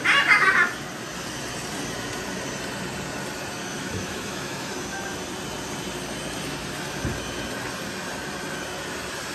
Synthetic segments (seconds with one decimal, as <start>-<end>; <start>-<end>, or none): 3.6-4.7